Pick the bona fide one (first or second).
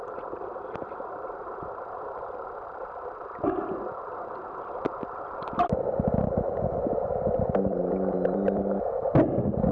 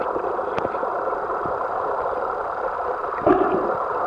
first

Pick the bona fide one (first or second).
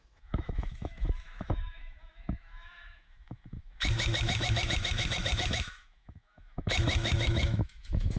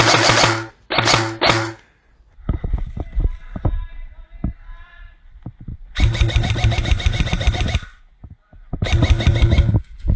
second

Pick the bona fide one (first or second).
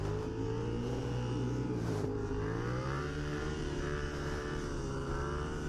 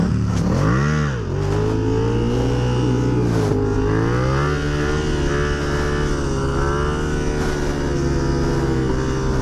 second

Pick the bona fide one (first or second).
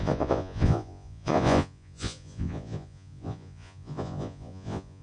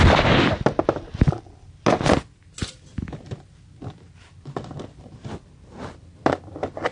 second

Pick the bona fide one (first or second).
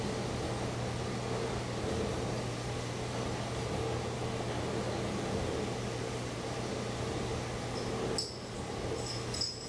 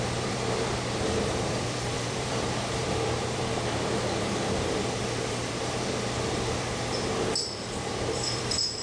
first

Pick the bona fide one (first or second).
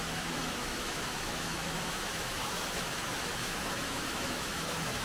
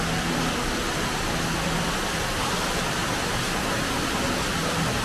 second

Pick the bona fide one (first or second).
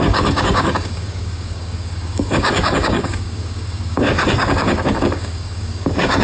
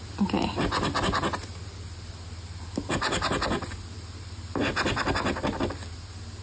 second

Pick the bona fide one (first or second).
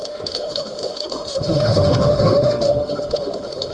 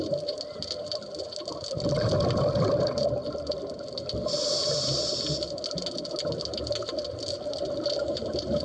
second